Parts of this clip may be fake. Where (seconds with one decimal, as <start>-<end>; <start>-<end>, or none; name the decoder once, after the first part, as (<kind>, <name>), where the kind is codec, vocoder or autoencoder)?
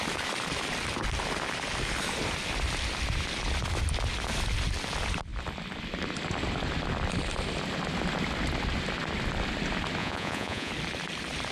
10.0-10.7 (vocoder, Vocos)